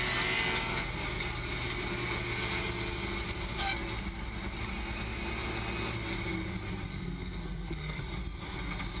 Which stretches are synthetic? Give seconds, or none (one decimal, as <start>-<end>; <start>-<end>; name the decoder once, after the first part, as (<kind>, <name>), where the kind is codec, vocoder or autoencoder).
6.9-8.0 (codec, SNAC)